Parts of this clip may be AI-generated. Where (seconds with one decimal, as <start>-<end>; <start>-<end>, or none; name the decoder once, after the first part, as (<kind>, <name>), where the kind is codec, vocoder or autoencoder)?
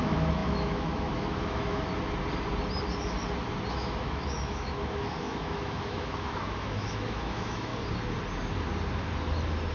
0.0-1.9 (autoencoder, DAC-VAE); 3.7-7.7